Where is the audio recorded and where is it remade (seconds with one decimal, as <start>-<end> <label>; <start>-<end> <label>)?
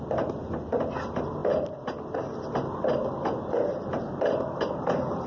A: 0.0-5.3 recorded